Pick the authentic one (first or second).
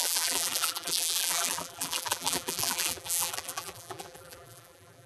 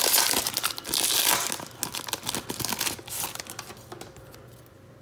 second